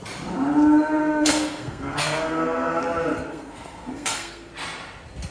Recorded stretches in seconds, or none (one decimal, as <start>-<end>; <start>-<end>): 0.0-1.0; 2.8-3.3; 4.5-5.3